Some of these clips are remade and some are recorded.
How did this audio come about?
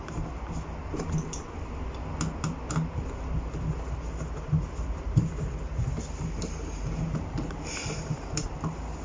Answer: recorded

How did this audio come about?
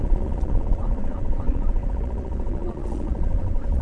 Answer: remade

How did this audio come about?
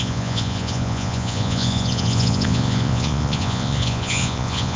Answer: remade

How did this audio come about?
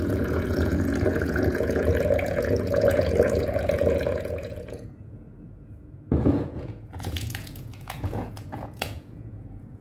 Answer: remade